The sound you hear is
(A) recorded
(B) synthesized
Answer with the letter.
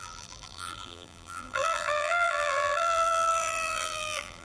B